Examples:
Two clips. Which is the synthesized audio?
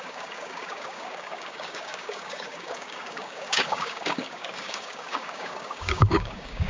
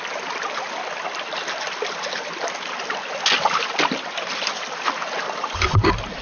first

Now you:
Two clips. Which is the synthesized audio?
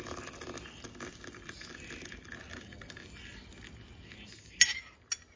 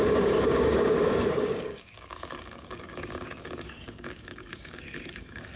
second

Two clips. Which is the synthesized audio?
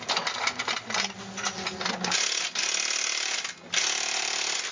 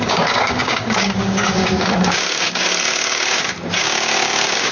second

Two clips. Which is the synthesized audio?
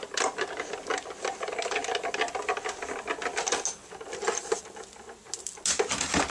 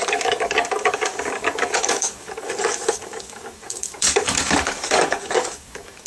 second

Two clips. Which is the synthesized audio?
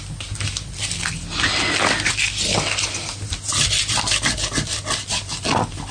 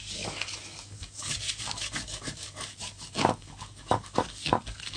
second